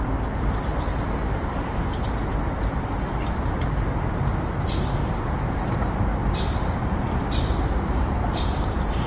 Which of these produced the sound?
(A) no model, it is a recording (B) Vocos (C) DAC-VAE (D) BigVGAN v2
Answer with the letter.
D